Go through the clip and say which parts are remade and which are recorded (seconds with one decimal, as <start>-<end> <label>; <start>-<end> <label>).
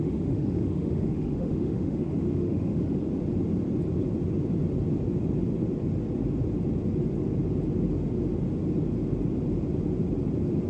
0.0-3.0 remade; 3.0-10.7 recorded